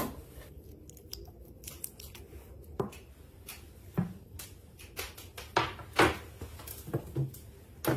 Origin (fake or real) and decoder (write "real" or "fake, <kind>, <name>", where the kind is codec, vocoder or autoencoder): real